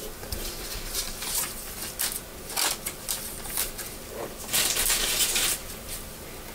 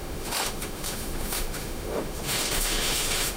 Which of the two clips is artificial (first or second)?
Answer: second